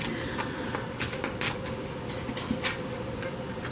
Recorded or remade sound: recorded